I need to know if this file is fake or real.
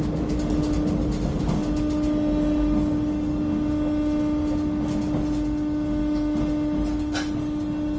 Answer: real